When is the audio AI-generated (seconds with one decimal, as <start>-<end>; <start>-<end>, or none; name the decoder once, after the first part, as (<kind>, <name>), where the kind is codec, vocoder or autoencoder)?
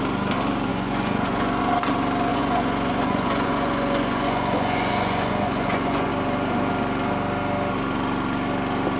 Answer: 0.7-1.6 (vocoder, Vocos); 2.3-6.1